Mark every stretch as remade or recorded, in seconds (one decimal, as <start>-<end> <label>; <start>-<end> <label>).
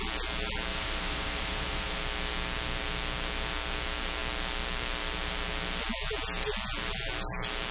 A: 0.0-0.7 recorded; 0.7-2.0 remade; 2.0-7.7 recorded